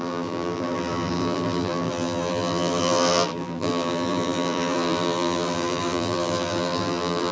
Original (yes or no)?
no